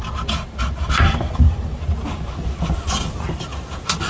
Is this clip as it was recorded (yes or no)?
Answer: yes